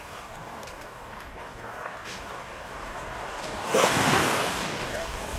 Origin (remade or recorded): remade